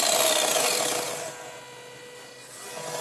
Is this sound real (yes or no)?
yes